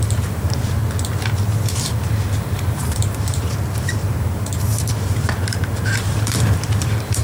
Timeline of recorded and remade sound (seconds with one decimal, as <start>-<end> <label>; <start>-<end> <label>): 0.0-0.8 remade; 0.8-1.6 recorded; 1.6-7.2 remade